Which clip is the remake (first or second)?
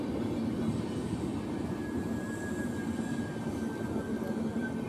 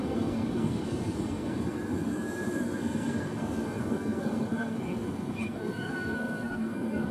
second